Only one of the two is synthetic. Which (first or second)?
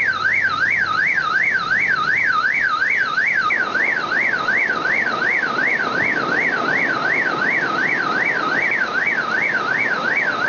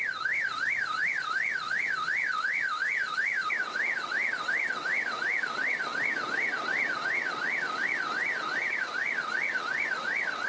second